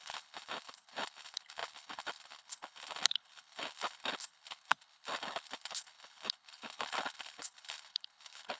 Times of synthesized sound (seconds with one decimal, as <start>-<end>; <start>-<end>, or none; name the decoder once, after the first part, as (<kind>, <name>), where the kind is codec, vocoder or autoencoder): 0.0-8.6 (codec, HILCodec)